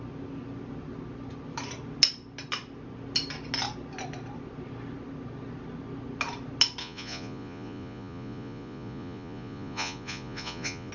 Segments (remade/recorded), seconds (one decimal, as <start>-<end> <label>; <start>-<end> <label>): 0.0-6.8 recorded; 6.8-10.9 remade